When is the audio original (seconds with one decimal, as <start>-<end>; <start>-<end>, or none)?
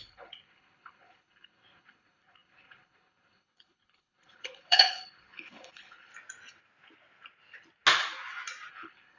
6.1-8.7